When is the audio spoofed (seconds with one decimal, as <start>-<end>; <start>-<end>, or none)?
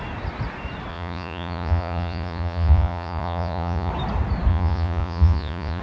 0.9-3.9; 4.5-5.8